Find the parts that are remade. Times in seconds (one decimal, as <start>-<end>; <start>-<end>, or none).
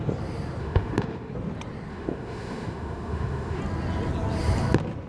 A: 0.6-1.3; 1.9-3.6